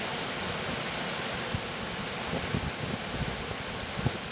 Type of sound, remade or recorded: recorded